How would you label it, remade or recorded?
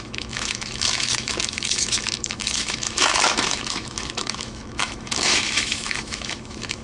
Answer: remade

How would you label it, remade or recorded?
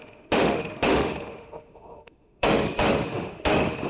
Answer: remade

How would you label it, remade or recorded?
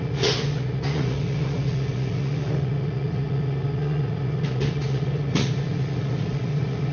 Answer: remade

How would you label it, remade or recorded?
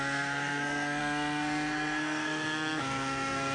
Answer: remade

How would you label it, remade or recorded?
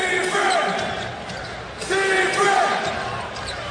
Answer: recorded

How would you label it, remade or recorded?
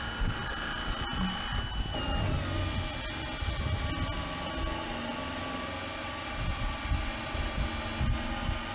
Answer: recorded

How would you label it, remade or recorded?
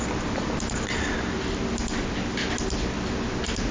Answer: recorded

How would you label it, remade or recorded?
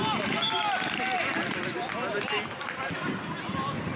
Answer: recorded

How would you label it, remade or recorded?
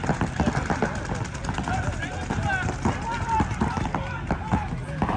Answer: recorded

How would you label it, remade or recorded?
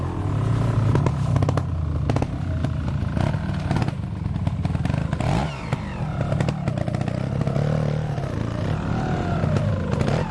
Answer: recorded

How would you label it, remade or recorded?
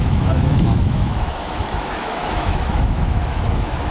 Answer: remade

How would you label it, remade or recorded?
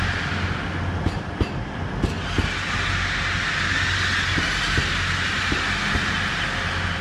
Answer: recorded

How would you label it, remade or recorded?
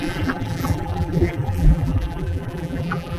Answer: remade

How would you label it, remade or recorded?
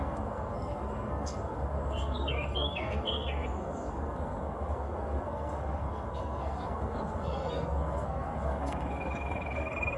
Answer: remade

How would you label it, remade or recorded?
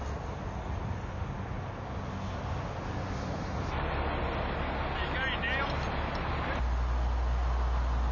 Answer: recorded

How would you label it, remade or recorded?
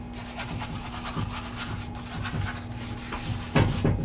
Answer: recorded